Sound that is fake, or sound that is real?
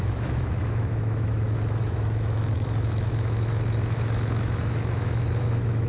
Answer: fake